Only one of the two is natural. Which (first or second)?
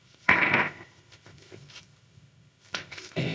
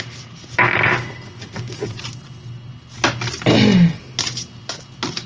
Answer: second